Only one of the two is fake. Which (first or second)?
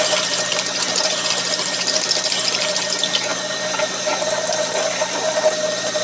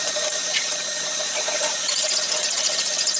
second